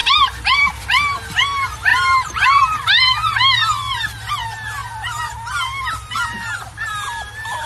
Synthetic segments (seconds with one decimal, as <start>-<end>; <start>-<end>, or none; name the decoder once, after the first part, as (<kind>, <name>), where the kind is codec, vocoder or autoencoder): 1.9-3.0 (vocoder, BigVGAN v2)